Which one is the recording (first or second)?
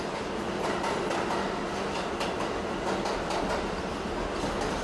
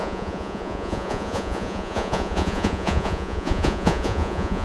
first